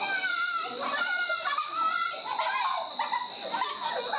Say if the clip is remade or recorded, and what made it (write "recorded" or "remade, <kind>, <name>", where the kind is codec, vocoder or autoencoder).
recorded